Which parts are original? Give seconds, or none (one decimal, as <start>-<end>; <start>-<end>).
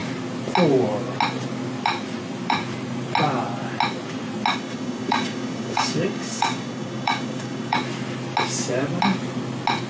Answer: 0.0-4.5; 7.8-9.9